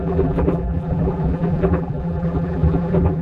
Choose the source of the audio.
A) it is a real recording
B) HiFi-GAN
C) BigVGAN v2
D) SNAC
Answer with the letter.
C